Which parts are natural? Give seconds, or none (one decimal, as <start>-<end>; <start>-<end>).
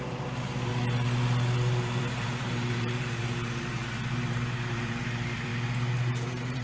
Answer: 0.7-2.0; 5.5-6.1